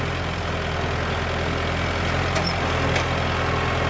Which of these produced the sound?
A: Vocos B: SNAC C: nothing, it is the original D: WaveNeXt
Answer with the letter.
C